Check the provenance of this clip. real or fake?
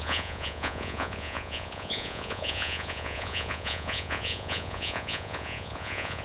fake